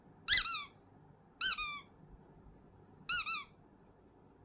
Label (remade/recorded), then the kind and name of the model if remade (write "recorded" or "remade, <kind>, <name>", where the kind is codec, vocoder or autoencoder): recorded